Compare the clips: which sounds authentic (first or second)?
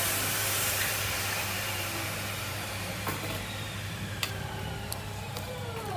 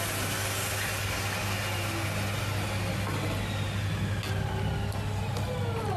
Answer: second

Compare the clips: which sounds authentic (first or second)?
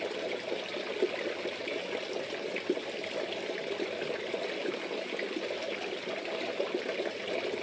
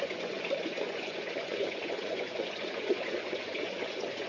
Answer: first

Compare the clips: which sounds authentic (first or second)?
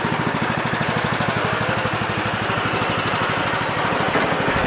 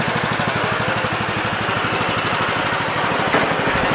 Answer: first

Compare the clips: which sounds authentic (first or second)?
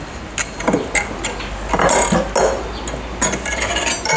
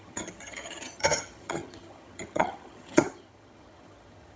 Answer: first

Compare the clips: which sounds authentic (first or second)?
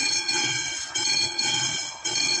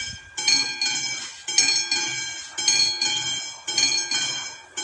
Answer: second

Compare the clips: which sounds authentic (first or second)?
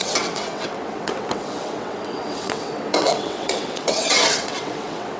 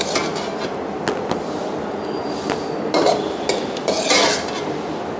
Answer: second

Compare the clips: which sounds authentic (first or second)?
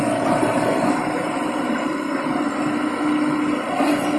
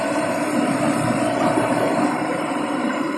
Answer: first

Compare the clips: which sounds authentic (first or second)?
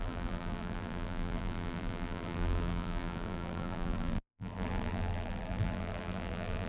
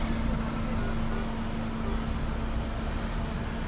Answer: second